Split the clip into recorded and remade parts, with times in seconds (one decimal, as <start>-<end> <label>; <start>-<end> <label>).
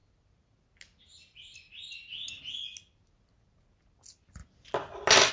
0.0-5.3 recorded